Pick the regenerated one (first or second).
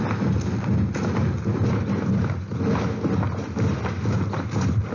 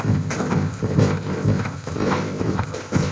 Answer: second